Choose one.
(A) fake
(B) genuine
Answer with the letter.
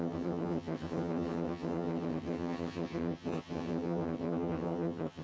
A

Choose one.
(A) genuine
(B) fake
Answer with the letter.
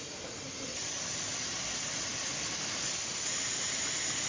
A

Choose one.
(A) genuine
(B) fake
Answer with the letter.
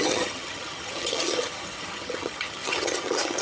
B